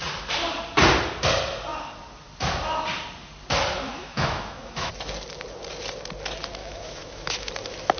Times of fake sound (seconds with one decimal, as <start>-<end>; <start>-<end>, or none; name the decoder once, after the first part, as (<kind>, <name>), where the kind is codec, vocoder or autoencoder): 4.0-4.9 (autoencoder, DAC-VAE); 6.6-7.5